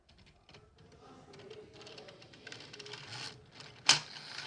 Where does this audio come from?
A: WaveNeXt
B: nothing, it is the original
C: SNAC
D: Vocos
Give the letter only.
B